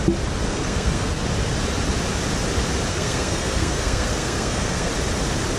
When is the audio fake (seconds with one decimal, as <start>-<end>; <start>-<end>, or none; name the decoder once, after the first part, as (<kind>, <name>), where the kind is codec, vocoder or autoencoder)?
0.5-1.2 (codec, SNAC); 2.9-4.9